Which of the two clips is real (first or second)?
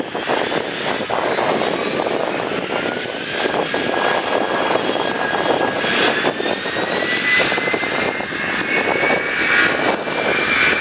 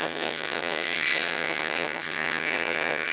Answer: first